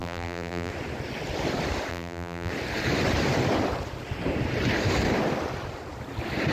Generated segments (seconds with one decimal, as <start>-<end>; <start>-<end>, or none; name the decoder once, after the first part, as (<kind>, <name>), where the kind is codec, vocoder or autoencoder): 0.0-0.7 (vocoder, BigVGAN v2); 1.9-2.5